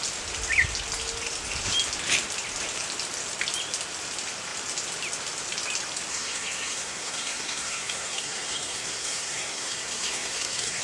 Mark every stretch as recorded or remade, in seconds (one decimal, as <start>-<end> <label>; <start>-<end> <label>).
0.0-6.1 recorded; 6.1-10.8 remade